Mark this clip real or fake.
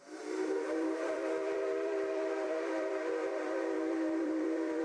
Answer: fake